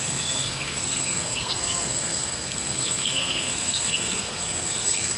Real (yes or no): no